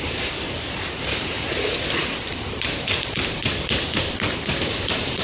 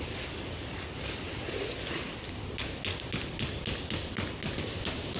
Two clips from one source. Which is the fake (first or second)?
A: first